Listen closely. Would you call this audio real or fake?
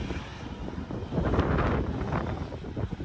real